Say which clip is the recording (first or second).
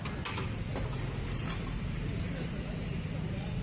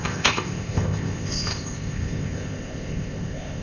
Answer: first